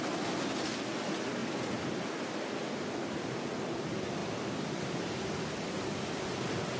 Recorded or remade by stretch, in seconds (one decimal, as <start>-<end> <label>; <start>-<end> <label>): 0.0-6.8 recorded